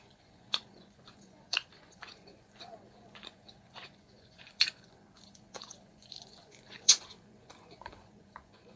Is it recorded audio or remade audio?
remade